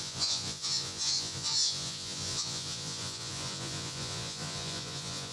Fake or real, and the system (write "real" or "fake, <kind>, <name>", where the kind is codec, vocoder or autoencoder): fake, vocoder, Vocos